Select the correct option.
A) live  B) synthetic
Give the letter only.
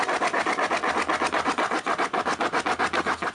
A